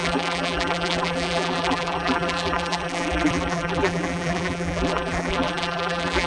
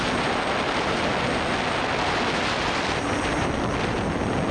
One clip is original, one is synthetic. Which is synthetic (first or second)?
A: first